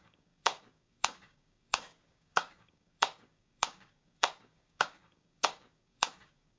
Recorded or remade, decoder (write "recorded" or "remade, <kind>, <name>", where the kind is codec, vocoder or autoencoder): remade, codec, DAC